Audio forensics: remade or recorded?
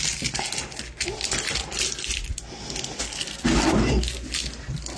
recorded